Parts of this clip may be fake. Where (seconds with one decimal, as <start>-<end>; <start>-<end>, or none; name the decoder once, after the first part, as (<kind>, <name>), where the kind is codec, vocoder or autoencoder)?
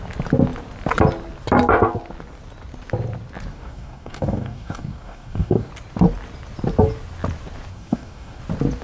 3.5-5.7 (codec, DAC); 7.7-8.4